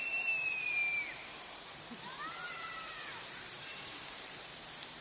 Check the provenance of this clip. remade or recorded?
remade